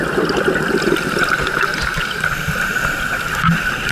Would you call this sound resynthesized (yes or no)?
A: no